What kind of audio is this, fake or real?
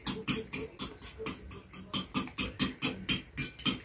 real